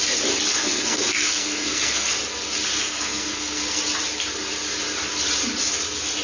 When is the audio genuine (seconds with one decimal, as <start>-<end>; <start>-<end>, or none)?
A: 0.0-0.6; 2.1-2.7; 3.8-6.2